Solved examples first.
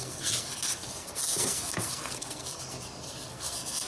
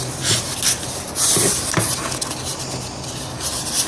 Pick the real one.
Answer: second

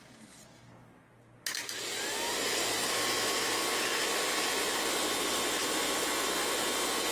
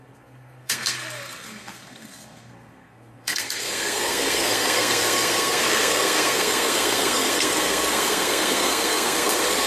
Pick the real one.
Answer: first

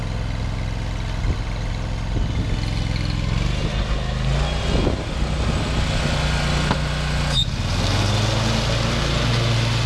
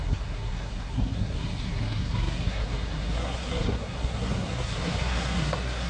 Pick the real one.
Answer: first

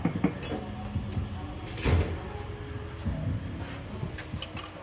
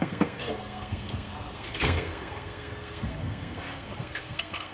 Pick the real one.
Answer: first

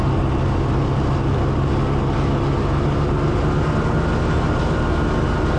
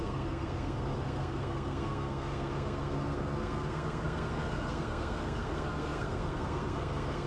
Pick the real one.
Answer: first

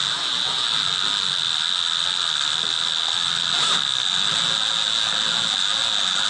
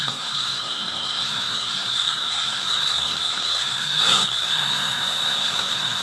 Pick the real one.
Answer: first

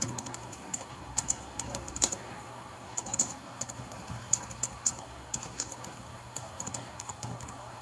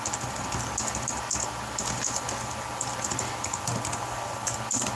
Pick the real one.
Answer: second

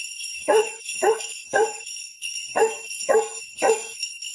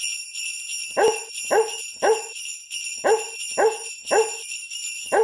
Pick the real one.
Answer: second